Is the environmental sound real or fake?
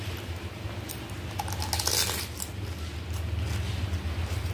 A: real